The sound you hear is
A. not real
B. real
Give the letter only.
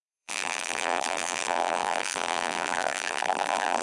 A